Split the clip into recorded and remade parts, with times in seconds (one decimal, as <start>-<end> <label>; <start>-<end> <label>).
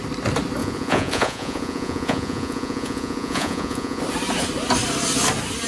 0.0-0.6 recorded; 0.6-4.0 remade; 4.0-5.7 recorded